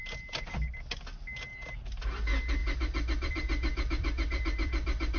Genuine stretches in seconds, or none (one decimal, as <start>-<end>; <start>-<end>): 0.0-1.5; 2.0-2.6